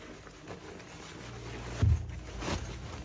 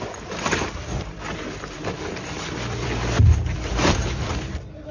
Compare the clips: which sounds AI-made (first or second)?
second